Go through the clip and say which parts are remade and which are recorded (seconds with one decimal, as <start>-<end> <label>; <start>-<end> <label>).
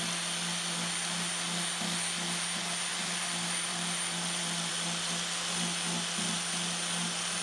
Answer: 0.0-2.9 recorded; 2.9-4.7 remade; 4.7-7.4 recorded